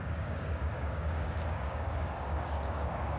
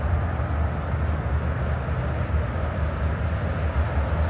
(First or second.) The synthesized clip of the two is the first